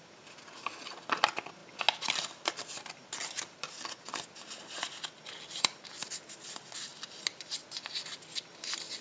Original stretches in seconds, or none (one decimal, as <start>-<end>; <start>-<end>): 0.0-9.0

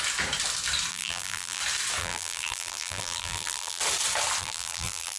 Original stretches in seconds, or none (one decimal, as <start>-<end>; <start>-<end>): 0.0-0.9; 1.6-2.0; 3.8-4.4

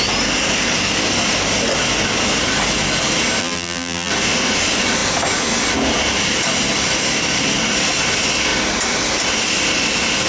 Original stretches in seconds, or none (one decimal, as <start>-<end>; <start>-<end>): 0.0-3.4; 4.1-10.3